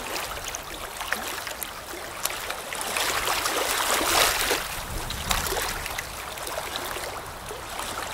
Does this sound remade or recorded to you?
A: recorded